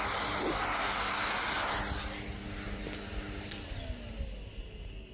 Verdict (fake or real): real